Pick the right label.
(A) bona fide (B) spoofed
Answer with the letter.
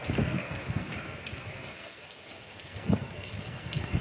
B